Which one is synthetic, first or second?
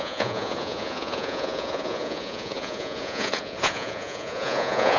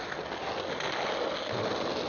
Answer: first